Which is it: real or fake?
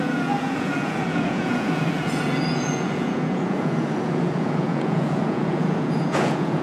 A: fake